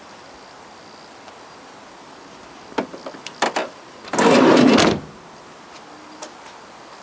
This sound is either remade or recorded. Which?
recorded